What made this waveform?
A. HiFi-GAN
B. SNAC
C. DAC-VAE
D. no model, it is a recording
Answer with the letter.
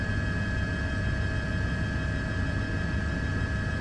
D